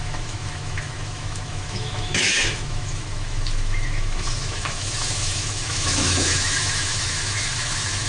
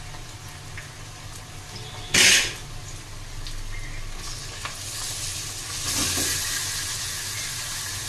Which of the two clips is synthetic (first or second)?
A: first